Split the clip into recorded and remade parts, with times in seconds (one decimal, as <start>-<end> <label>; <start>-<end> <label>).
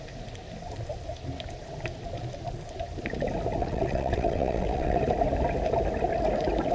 0.0-3.6 recorded; 3.6-5.0 remade; 5.0-6.7 recorded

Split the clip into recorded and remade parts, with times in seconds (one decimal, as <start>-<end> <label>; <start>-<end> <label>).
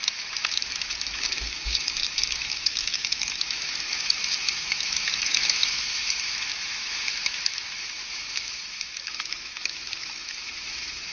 0.0-11.1 remade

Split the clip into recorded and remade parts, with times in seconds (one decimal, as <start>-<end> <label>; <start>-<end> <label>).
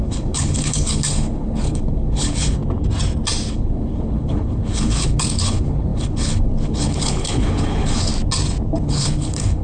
0.0-2.6 remade; 2.6-3.5 recorded; 3.5-8.1 remade; 8.1-8.8 recorded; 8.8-9.6 remade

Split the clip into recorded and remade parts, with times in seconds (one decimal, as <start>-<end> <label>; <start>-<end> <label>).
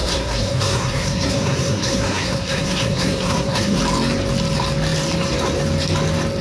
0.0-3.8 remade; 3.8-6.4 recorded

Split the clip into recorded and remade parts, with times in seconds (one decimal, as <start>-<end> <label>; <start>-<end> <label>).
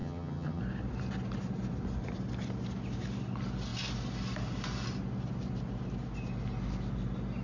0.0-0.6 remade; 0.6-7.4 recorded